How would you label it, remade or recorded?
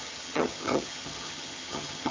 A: remade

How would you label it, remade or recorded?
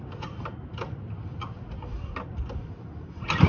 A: recorded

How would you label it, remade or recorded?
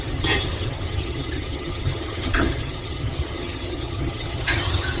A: remade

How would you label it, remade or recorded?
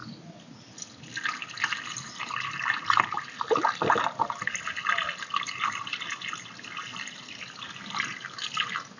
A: recorded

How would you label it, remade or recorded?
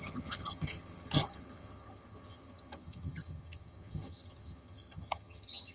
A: remade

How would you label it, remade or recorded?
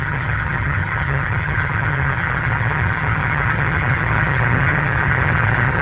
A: remade